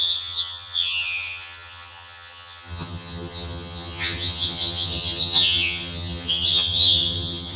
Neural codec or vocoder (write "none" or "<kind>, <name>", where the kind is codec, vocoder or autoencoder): vocoder, HiFi-GAN